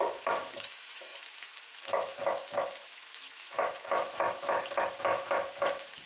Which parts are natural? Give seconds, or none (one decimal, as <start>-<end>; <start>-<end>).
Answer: none